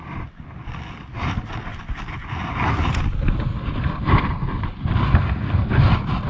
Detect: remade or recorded recorded